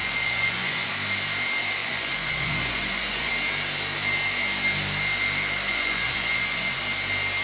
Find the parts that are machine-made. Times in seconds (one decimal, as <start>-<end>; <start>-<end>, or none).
0.0-0.9; 1.8-3.3; 5.7-6.8